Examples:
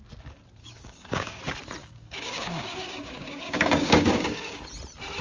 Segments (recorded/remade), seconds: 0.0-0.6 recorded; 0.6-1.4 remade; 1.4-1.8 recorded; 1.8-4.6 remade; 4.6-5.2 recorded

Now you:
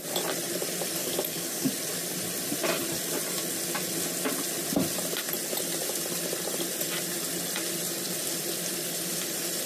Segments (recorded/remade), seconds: 0.0-1.0 recorded; 1.0-1.7 remade; 1.7-9.7 recorded

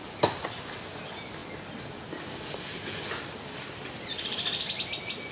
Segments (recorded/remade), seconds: 0.0-5.3 recorded

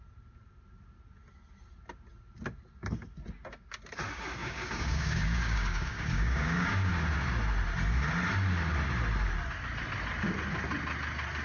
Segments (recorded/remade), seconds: 0.0-4.4 recorded; 4.4-6.9 remade; 6.9-11.4 recorded